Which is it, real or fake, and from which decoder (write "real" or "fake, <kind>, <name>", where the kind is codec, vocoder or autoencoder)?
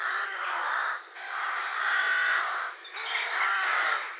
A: fake, vocoder, BigVGAN v2